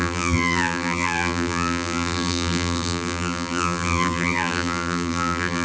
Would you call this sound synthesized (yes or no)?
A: yes